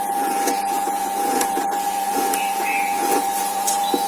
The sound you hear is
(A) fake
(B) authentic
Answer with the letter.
A